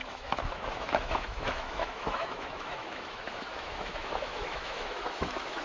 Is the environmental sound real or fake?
fake